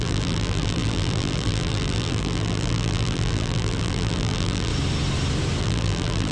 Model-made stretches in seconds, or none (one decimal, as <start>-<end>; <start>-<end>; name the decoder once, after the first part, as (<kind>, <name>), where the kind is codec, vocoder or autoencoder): 0.0-4.7 (vocoder, BigVGAN v2); 5.6-6.3